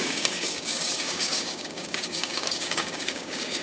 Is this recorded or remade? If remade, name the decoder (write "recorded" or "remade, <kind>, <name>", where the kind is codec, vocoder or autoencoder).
remade, codec, DAC